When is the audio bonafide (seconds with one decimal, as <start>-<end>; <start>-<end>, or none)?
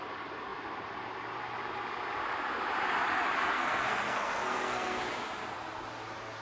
0.0-3.5; 5.0-6.4